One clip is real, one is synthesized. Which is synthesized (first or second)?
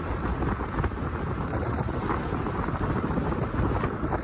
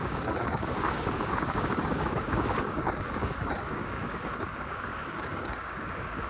second